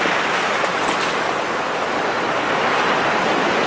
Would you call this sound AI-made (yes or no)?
no